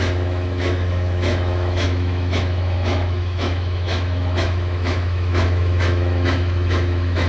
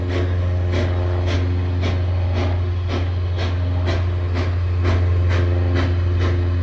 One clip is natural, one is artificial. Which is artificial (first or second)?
first